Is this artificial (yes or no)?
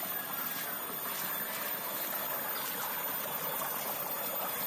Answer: no